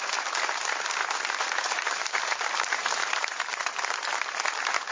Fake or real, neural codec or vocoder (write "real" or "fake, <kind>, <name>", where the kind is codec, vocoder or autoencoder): fake, vocoder, BigVGAN v2